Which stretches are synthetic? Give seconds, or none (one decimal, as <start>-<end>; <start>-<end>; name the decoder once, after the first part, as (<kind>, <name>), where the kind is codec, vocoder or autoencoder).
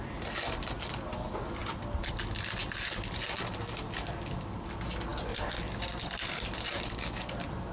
none